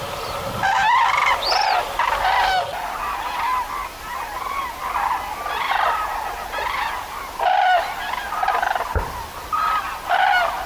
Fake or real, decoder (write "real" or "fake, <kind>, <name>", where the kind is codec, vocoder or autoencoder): real